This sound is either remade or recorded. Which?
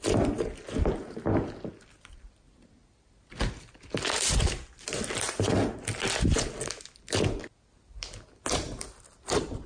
recorded